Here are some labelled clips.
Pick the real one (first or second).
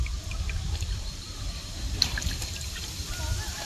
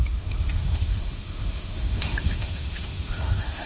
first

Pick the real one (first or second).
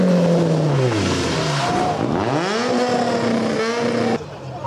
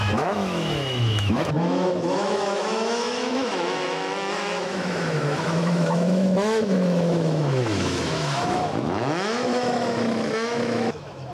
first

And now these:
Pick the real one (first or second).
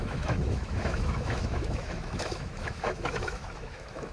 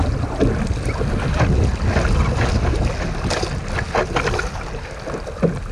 second